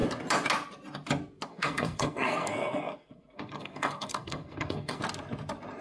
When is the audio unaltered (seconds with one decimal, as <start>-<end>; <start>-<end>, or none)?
0.0-1.5; 5.0-5.8